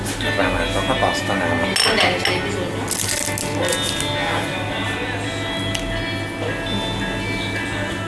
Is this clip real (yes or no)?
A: yes